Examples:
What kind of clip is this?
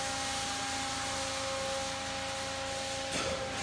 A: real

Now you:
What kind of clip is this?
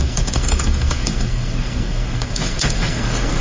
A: fake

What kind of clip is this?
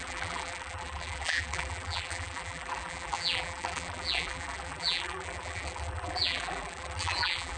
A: fake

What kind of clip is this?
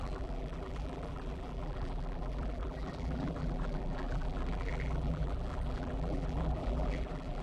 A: fake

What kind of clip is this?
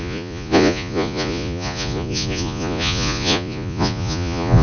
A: fake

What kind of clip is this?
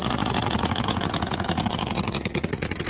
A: fake